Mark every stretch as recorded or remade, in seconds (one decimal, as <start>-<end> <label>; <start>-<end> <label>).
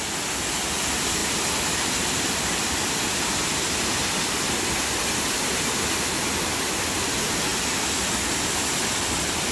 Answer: 0.0-9.5 recorded